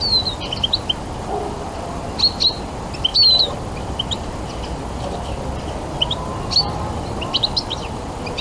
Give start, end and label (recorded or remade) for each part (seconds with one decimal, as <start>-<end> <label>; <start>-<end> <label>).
0.0-8.4 recorded